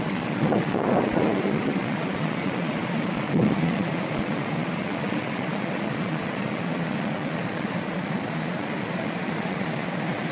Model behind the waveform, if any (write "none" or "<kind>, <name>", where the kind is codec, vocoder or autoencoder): vocoder, Vocos